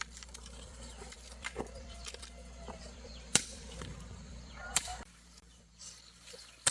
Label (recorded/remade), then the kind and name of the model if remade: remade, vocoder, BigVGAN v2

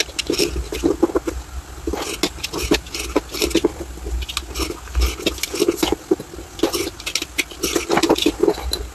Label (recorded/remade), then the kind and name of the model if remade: recorded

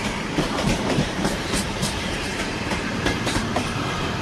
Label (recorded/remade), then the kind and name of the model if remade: remade, vocoder, BigVGAN v2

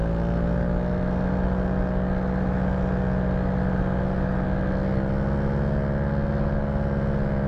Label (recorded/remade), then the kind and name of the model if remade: recorded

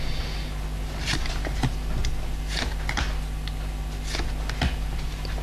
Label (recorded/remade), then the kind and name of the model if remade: recorded